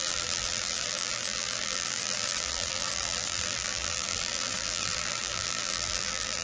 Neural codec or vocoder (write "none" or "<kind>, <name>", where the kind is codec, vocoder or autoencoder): vocoder, BigVGAN v2